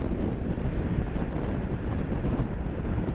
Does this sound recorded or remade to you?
recorded